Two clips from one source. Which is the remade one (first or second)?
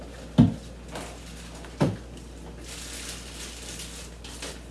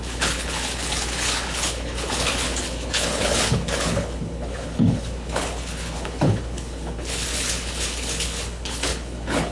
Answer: second